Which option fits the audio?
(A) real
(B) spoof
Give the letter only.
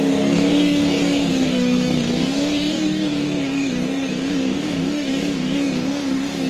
B